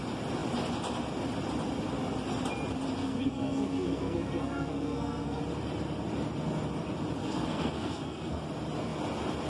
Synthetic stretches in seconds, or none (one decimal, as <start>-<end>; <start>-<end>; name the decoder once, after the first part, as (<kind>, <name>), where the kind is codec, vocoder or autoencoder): 3.0-5.4 (codec, SNAC); 7.2-8.4